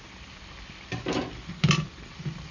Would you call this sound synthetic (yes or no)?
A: no